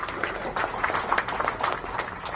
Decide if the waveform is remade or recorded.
recorded